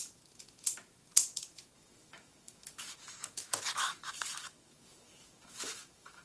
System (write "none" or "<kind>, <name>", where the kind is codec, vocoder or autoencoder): autoencoder, DAC-VAE